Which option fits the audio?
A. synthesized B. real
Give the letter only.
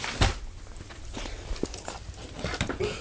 B